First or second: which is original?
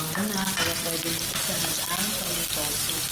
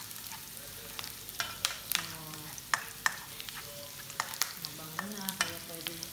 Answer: first